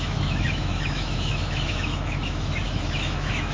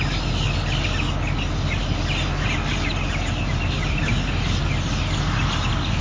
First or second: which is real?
second